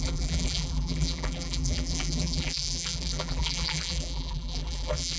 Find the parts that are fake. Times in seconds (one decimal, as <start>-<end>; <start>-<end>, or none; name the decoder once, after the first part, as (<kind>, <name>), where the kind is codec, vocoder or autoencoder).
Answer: 0.0-5.2 (vocoder, BigVGAN v2)